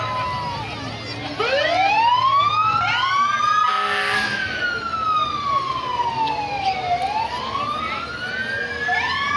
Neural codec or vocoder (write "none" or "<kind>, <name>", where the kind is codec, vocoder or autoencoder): none